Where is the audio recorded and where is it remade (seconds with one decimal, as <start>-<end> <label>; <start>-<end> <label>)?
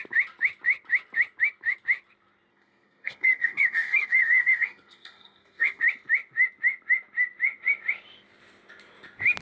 0.0-2.5 recorded; 2.5-5.8 remade; 5.8-9.4 recorded